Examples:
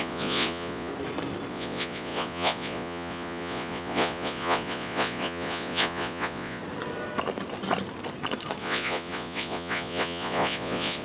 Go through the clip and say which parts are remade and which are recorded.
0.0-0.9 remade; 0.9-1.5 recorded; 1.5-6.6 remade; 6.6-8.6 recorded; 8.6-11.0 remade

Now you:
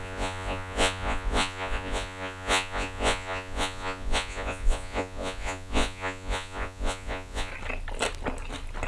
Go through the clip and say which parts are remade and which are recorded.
0.0-7.5 remade; 7.5-8.9 recorded

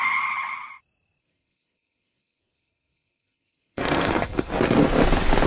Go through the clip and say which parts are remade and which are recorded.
0.0-1.2 recorded; 1.2-4.5 remade; 4.5-5.5 recorded